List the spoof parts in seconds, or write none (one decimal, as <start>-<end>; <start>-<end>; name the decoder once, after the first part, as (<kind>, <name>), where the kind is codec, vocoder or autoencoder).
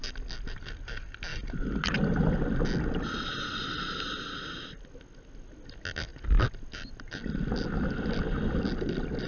none